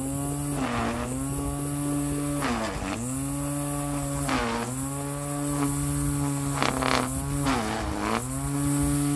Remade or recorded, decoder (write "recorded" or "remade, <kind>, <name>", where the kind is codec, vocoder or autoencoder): recorded